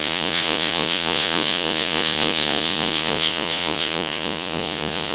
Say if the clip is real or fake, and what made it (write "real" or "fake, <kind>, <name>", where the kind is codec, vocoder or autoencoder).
fake, vocoder, Vocos